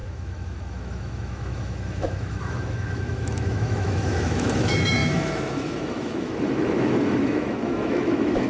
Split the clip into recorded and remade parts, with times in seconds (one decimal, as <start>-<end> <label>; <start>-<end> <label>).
0.0-8.5 remade